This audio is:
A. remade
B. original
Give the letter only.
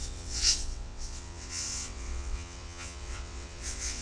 A